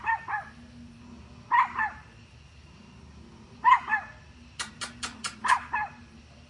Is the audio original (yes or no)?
yes